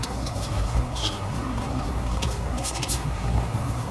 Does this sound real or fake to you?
fake